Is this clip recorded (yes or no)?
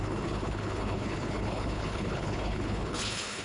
no